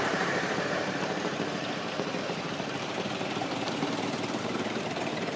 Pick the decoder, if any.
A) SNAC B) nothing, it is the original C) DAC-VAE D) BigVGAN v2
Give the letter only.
D